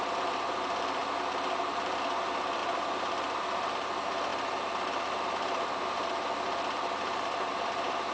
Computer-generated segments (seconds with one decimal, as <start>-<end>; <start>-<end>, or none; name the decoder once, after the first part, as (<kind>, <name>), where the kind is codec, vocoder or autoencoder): 0.0-1.0 (vocoder, BigVGAN v2); 1.7-2.6; 3.4-8.1